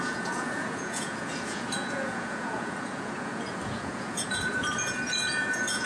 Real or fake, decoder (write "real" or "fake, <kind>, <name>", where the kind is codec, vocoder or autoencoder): fake, vocoder, Vocos